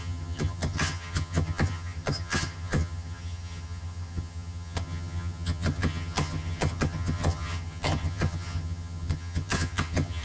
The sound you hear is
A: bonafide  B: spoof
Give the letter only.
B